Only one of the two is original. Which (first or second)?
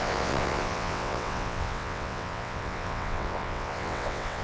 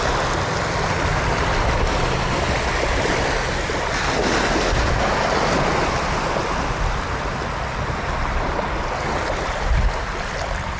second